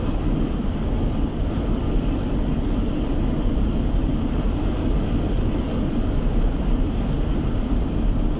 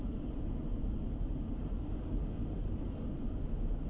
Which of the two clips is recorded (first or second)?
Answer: second